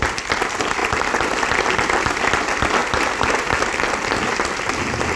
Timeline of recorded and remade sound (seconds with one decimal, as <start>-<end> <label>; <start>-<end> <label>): 0.0-5.2 recorded